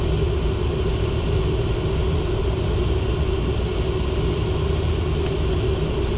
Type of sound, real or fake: real